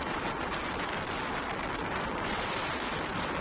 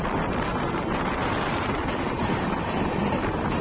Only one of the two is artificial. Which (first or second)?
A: second